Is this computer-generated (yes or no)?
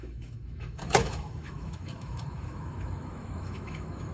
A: yes